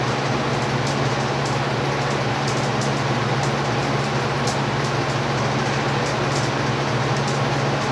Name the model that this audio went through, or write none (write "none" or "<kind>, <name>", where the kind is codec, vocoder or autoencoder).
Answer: none